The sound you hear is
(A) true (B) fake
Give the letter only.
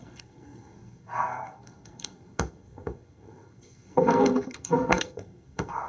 B